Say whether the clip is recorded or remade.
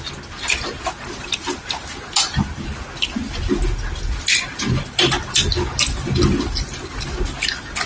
recorded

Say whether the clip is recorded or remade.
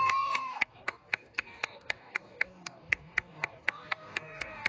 remade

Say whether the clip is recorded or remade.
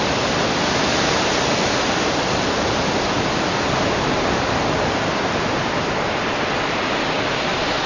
recorded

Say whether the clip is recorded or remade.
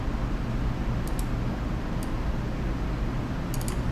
recorded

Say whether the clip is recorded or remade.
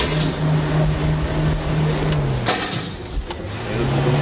recorded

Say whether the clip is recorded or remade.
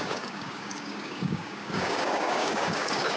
remade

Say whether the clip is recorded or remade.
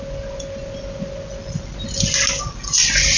recorded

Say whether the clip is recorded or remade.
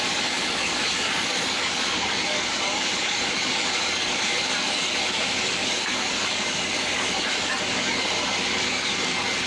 remade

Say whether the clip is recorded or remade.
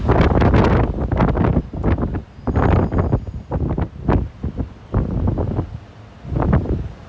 recorded